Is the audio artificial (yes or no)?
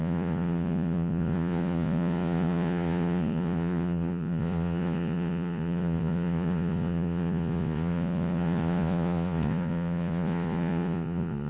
yes